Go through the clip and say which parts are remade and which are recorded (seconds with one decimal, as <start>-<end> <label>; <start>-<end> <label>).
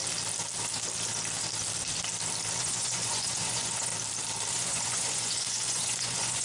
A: 0.0-2.6 recorded; 2.6-3.9 remade; 3.9-4.5 recorded; 4.5-6.4 remade